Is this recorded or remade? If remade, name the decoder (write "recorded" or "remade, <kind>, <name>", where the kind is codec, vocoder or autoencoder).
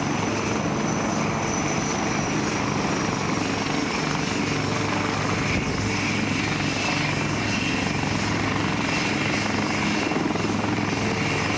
recorded